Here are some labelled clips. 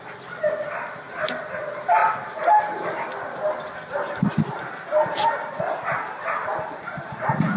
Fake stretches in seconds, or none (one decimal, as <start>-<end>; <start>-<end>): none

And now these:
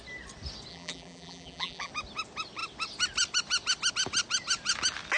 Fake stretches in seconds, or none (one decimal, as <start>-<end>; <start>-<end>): 0.7-1.9

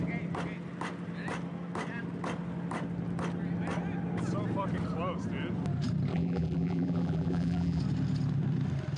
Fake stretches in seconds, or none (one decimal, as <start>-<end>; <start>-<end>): 6.1-7.8

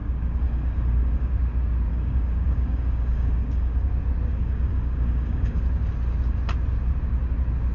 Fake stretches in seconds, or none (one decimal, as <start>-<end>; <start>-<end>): 0.0-1.3; 1.9-3.9; 4.3-5.6

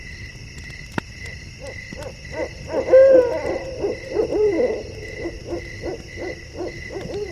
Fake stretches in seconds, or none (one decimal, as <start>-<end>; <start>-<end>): 3.9-5.4